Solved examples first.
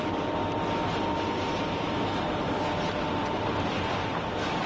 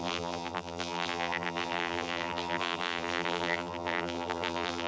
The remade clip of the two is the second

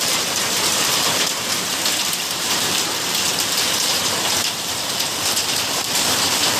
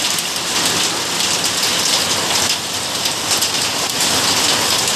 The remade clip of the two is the first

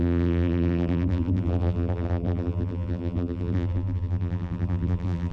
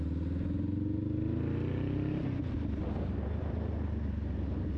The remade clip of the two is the first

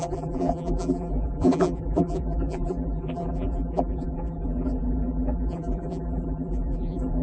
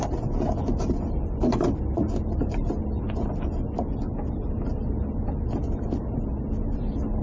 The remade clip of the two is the first